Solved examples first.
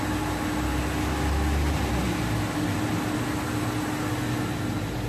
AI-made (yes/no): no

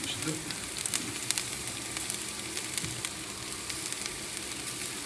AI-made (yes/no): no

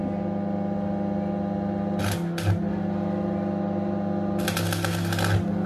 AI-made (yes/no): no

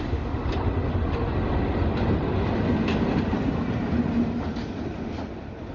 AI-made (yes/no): no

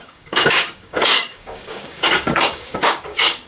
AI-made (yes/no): yes